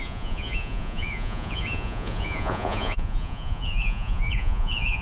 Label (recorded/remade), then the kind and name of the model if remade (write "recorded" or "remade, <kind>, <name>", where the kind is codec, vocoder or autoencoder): remade, vocoder, Vocos